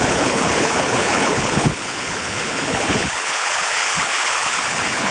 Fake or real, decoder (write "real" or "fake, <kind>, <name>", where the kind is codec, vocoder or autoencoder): fake, codec, HILCodec